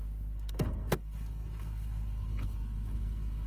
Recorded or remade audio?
remade